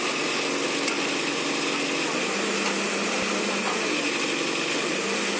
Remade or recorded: recorded